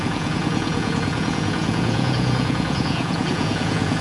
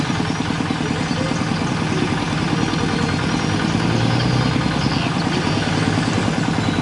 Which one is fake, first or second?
first